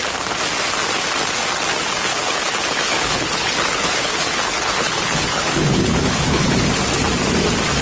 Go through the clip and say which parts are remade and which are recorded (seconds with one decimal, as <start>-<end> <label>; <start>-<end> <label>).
0.0-2.1 recorded; 2.1-6.8 remade; 6.8-7.8 recorded